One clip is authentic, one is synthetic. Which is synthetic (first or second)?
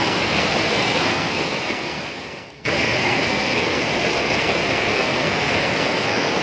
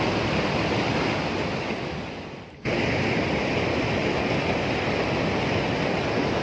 first